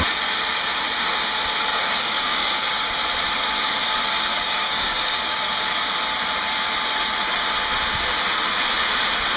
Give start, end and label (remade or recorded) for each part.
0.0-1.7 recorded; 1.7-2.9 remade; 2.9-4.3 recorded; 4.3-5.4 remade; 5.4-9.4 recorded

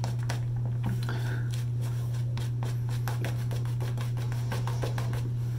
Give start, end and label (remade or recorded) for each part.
0.0-5.6 recorded

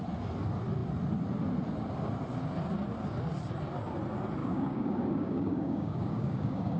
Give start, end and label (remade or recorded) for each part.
0.0-4.4 recorded; 4.4-6.8 remade

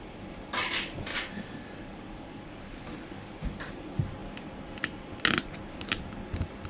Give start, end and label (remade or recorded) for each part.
0.0-1.1 recorded; 1.1-3.3 remade; 3.3-6.7 recorded

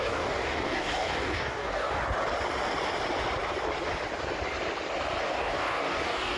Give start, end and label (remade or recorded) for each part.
0.0-2.0 remade; 2.0-5.2 recorded; 5.2-6.4 remade

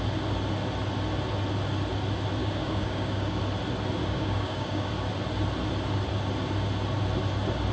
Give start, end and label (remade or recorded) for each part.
0.0-2.4 recorded; 2.4-3.4 remade; 3.4-4.0 recorded; 4.0-4.9 remade; 4.9-7.7 recorded